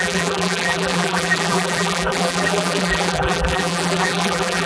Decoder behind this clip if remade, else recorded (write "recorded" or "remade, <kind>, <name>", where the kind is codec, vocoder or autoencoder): remade, vocoder, BigVGAN v2